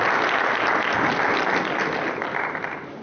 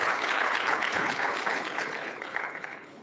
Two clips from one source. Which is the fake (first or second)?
second